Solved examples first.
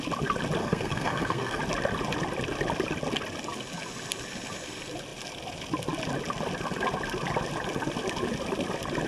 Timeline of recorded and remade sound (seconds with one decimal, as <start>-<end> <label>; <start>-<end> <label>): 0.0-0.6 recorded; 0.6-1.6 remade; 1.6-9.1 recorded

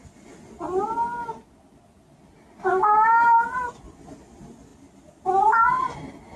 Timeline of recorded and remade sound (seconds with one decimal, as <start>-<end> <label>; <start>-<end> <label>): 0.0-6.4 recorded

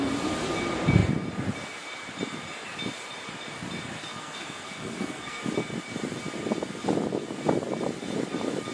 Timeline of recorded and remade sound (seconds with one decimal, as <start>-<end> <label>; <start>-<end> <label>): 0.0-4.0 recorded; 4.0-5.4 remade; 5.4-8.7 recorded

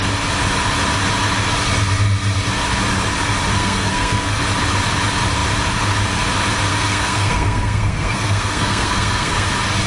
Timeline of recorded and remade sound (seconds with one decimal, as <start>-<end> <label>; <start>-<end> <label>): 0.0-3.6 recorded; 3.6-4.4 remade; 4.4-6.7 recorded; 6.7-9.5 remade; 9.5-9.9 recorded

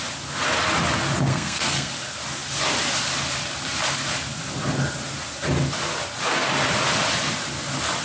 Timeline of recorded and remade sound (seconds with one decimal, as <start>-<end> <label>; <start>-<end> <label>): 0.0-1.3 recorded; 1.3-1.9 remade; 1.9-8.0 recorded

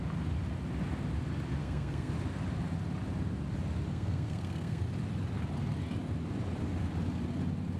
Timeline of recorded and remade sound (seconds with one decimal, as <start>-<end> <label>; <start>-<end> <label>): 0.0-1.6 recorded; 1.6-2.1 remade; 2.1-3.9 recorded; 3.9-4.8 remade; 4.8-7.8 recorded

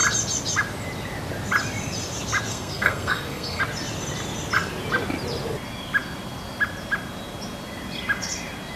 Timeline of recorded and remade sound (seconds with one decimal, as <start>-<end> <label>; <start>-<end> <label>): 0.0-2.5 recorded; 2.5-3.6 remade; 3.6-8.8 recorded

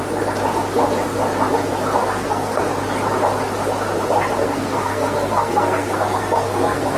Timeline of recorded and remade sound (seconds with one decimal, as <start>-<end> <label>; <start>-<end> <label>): 0.0-2.0 recorded; 2.0-2.6 remade; 2.6-4.4 recorded; 4.4-7.0 remade